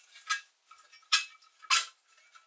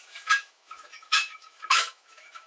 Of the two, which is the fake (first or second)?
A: second